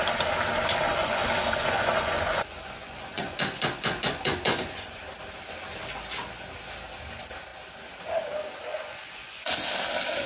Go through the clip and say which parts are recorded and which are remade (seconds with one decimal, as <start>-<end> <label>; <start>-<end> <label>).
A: 0.0-0.9 recorded; 0.9-5.0 remade; 5.0-8.7 recorded; 8.7-9.5 remade; 9.5-10.3 recorded